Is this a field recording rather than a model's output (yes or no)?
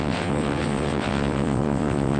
no